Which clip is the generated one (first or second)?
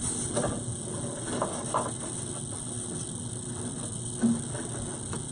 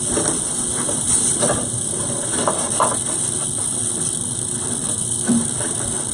second